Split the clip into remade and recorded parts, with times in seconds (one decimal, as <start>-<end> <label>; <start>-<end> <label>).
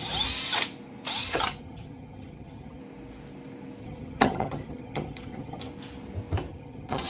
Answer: 0.0-1.2 recorded; 1.2-2.8 remade; 2.8-3.8 recorded; 3.8-5.6 remade; 5.6-6.5 recorded; 6.5-7.1 remade